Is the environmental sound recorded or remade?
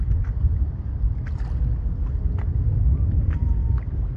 recorded